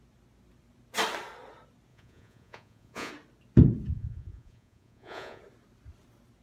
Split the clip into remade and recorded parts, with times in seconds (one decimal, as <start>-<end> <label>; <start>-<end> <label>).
0.0-1.9 recorded; 1.9-3.1 remade; 3.1-3.9 recorded; 3.9-5.4 remade; 5.4-6.4 recorded